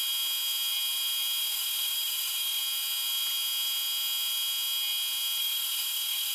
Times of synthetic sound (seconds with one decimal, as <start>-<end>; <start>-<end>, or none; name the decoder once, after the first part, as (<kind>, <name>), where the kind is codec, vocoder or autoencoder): 1.4-2.6 (autoencoder, DAC-VAE); 5.4-6.3